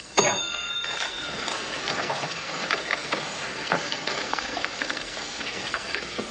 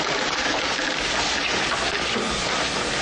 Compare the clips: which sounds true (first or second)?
second